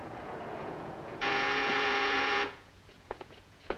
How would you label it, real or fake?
fake